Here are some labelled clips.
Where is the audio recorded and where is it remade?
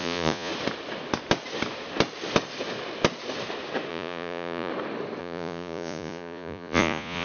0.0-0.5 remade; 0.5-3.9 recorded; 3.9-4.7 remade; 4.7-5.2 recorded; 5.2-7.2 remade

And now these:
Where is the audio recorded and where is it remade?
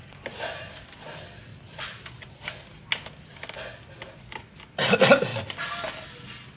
0.0-6.6 recorded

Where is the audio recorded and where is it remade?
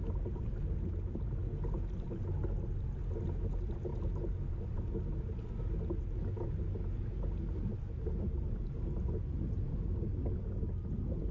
0.0-11.3 recorded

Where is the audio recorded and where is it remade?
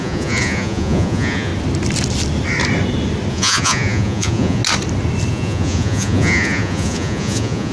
0.0-1.5 remade; 1.5-3.3 recorded; 3.3-4.6 remade; 4.6-5.3 recorded; 5.3-7.7 remade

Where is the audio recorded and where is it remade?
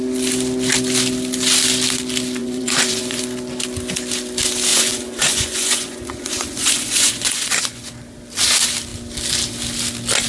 0.0-2.4 recorded; 2.4-3.2 remade; 3.2-4.7 recorded; 4.7-7.9 remade; 7.9-10.3 recorded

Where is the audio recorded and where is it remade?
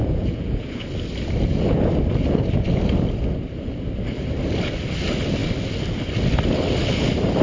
0.0-0.8 remade; 0.8-7.4 recorded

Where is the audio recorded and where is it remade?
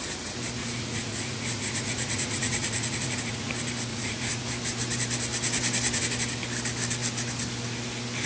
0.0-0.6 recorded; 0.6-3.5 remade; 3.5-3.9 recorded; 3.9-4.5 remade; 4.5-8.3 recorded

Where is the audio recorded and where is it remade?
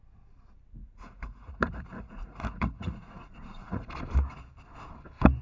0.0-0.8 recorded; 0.8-3.9 remade; 3.9-5.4 recorded